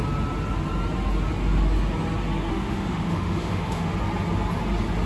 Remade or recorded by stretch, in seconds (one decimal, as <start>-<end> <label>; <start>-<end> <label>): 0.0-2.5 recorded; 2.5-3.9 remade; 3.9-5.1 recorded